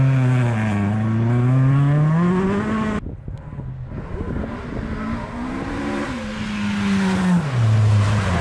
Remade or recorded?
recorded